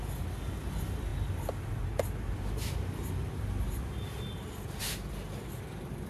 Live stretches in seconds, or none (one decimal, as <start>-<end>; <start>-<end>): 0.0-6.1

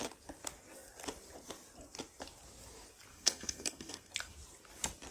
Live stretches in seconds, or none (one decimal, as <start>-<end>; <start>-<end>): 0.0-3.1; 4.1-5.1

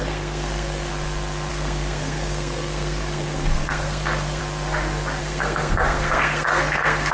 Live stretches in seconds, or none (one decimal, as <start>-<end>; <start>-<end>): 0.9-1.5; 4.4-5.2

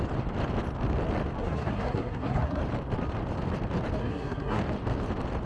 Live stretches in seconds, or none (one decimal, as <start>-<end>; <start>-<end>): 0.0-1.4; 2.6-4.0; 4.6-5.5

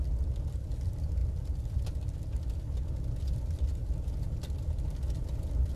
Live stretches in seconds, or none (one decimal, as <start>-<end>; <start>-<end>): 0.0-5.8